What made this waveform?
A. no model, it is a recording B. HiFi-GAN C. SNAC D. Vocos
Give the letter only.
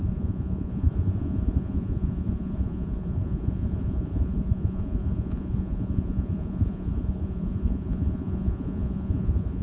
D